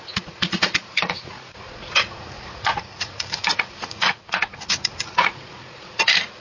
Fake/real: fake